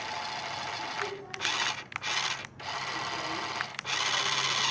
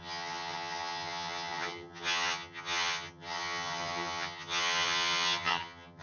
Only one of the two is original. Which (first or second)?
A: first